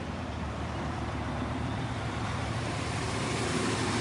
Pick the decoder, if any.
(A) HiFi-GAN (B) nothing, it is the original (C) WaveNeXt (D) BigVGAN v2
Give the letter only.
D